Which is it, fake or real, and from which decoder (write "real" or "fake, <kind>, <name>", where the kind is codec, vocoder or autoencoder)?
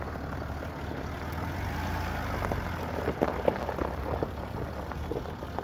real